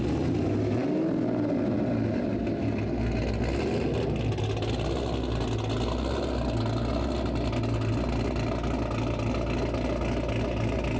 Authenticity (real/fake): real